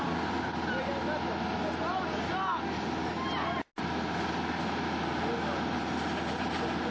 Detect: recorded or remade recorded